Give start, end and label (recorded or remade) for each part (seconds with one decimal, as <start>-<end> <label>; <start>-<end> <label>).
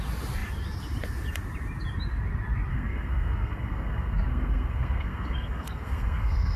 0.0-2.7 recorded; 2.7-6.6 remade